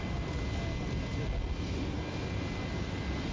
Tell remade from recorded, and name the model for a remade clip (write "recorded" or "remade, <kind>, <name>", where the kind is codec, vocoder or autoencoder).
recorded